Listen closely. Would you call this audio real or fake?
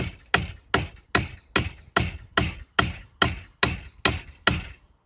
real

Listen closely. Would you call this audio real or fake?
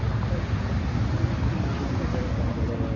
real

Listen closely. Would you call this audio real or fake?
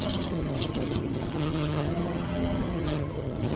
fake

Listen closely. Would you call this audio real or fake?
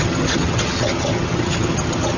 fake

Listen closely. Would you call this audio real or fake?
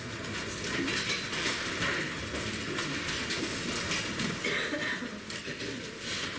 real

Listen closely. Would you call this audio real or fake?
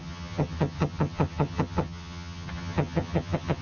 fake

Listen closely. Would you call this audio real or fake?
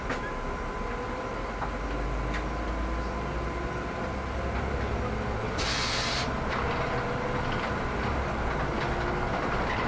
real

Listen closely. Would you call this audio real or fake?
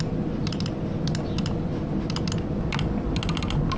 real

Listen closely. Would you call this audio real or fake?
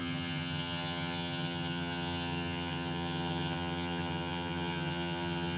fake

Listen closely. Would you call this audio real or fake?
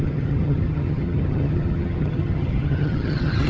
fake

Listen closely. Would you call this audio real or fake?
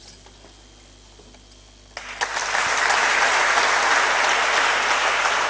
real